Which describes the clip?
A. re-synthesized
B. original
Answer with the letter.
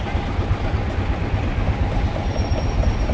B